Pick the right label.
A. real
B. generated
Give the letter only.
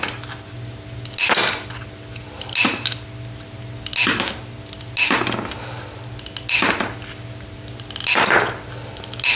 A